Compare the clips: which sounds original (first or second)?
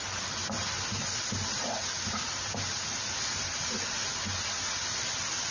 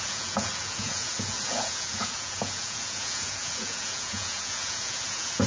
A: first